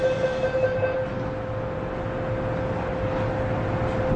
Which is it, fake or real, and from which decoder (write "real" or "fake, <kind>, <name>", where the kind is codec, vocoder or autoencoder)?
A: real